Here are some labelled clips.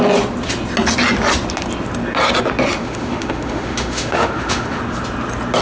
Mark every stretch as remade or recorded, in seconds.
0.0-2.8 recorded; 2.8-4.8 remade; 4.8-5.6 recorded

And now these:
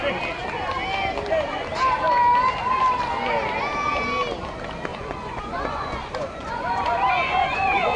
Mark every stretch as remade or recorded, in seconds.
0.0-4.9 recorded; 4.9-8.0 remade

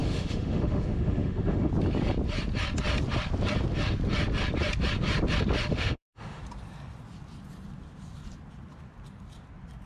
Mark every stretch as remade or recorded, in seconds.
0.0-1.7 remade; 1.7-5.7 recorded; 5.7-6.4 remade; 6.4-9.9 recorded

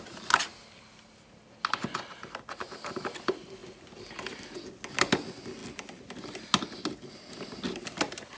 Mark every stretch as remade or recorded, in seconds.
0.0-8.4 recorded

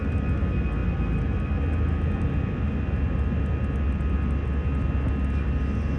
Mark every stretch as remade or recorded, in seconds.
0.0-6.0 recorded

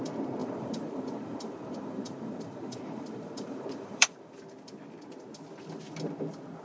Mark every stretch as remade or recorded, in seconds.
0.0-0.4 recorded; 0.4-4.4 remade; 4.4-6.6 recorded